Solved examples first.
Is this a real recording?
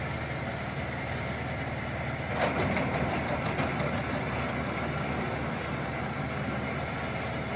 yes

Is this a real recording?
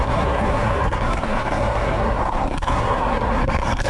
no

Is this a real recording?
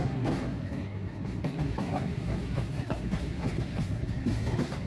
no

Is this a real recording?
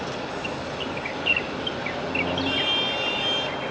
yes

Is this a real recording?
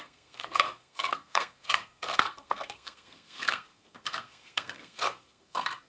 no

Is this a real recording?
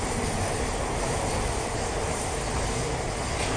yes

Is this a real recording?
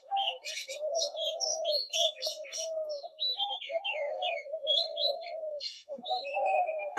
no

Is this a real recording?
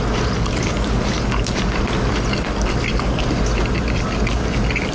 yes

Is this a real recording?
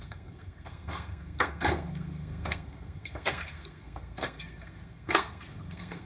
no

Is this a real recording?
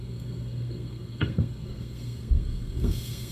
no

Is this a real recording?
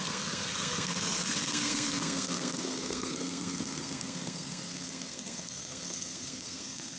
no